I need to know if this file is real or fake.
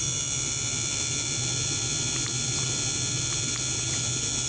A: real